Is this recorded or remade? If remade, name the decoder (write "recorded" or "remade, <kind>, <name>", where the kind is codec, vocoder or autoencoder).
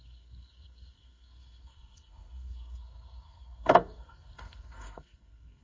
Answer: remade, codec, SNAC